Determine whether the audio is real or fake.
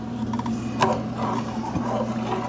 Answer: real